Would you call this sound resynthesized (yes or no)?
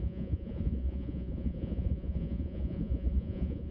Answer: yes